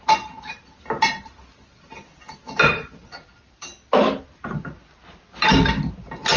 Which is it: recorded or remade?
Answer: recorded